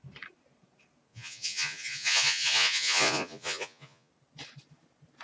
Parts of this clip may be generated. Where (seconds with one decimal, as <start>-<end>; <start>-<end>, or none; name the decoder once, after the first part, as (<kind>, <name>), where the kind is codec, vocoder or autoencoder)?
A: 1.1-4.1 (vocoder, Vocos)